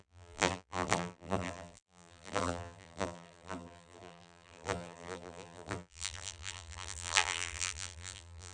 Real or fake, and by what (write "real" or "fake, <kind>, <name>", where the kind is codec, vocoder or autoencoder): fake, vocoder, BigVGAN v2